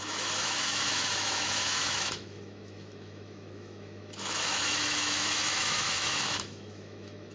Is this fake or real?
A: fake